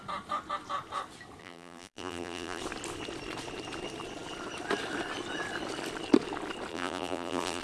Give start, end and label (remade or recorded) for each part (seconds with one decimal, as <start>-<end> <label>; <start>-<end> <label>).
0.0-1.4 recorded; 1.4-2.6 remade; 2.6-6.7 recorded; 6.7-7.6 remade